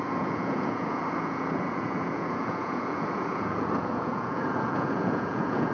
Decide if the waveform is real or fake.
fake